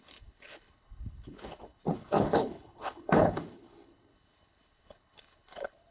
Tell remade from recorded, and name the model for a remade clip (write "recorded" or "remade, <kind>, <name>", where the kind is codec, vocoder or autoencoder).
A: remade, codec, HILCodec